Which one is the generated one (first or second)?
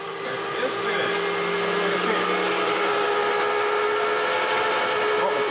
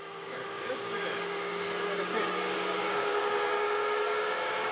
second